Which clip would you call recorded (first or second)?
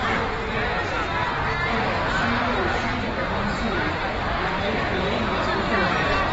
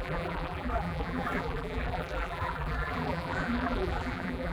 first